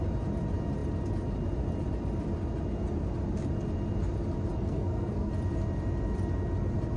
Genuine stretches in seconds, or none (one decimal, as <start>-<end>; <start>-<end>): 0.0-4.5; 5.3-7.0